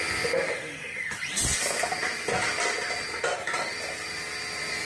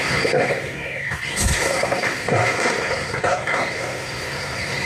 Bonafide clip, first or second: first